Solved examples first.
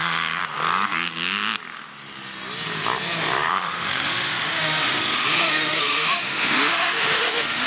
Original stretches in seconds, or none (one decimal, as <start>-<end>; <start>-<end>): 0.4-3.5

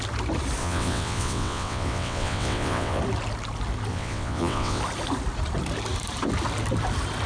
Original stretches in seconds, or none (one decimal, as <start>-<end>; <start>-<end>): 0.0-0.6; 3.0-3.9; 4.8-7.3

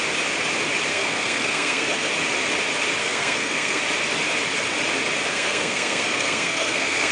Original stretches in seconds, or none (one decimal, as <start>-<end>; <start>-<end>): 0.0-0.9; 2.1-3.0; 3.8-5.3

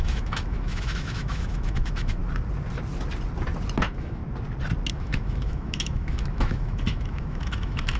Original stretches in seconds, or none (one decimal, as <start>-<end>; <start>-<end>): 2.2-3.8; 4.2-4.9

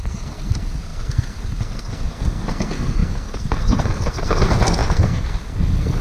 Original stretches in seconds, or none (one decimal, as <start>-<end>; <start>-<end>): none

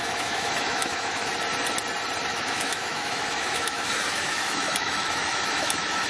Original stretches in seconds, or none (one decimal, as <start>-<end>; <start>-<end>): 1.3-2.2